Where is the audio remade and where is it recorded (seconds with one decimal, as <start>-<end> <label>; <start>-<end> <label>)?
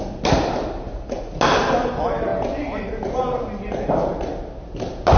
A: 0.0-5.2 recorded